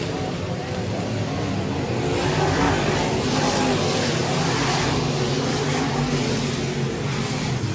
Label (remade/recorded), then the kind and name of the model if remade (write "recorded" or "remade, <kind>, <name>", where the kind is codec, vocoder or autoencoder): recorded